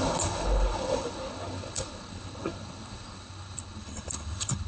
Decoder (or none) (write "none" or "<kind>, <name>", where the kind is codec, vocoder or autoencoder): codec, HILCodec